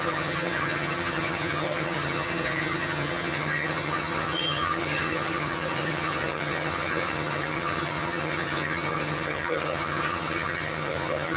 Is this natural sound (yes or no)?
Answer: no